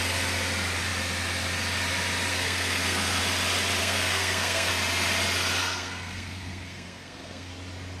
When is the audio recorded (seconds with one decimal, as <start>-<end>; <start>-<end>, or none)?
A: 0.0-2.3; 3.2-3.8; 4.7-5.6; 7.5-8.0